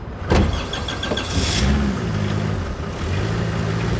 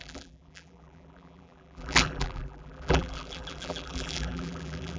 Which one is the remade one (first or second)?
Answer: second